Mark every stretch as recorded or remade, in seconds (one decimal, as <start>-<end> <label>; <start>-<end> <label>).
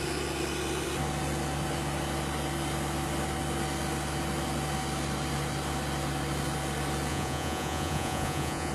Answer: 0.0-7.1 recorded; 7.1-8.7 remade